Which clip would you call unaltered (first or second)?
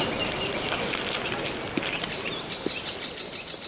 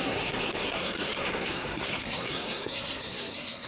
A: first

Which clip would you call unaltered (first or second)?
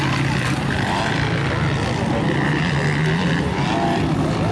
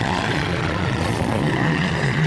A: first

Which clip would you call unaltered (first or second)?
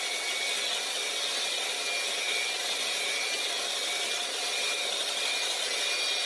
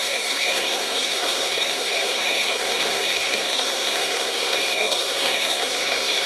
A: first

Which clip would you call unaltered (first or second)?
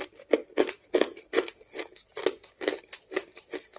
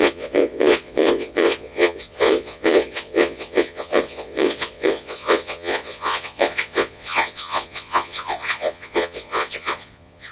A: first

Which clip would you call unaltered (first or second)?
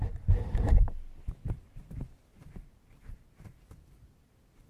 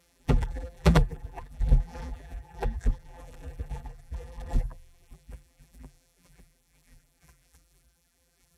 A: first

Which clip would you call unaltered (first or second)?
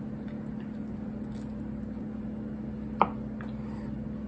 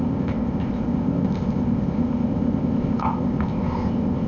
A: first